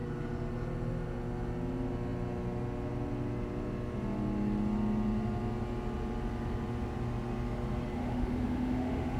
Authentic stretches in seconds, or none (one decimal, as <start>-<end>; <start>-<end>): 0.0-8.0